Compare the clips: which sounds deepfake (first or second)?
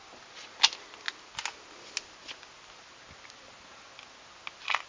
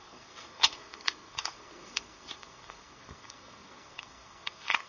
second